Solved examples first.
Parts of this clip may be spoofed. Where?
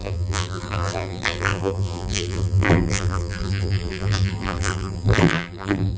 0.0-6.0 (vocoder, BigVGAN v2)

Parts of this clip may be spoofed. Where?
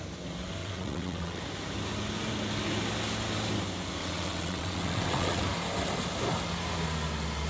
0.6-1.4 (vocoder, WaveNeXt); 4.0-5.4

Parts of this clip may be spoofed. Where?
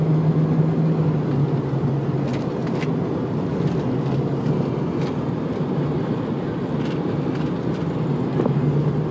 none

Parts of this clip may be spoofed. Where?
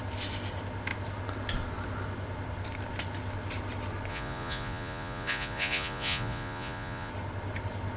4.1-7.1 (vocoder, Vocos)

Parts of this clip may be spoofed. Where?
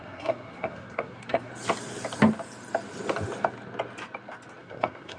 0.0-1.5 (codec, SNAC); 4.6-5.2